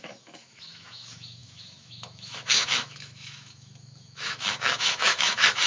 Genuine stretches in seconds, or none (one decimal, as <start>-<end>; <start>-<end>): none